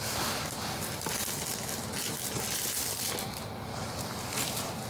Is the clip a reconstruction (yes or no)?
no